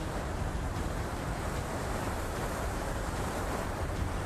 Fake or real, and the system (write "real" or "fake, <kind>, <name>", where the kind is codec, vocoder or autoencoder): fake, vocoder, BigVGAN v2